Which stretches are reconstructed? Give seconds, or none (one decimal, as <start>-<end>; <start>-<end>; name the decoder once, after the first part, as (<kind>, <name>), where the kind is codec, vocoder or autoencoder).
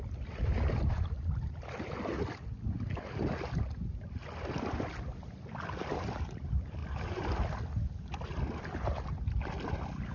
none